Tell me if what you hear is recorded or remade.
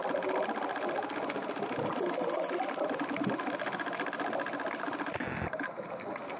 recorded